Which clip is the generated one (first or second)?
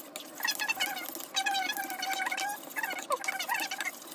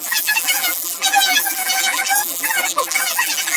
second